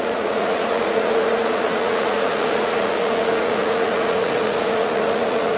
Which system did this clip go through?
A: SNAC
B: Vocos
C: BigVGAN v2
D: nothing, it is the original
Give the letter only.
B